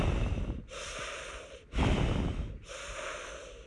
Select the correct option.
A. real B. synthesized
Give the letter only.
A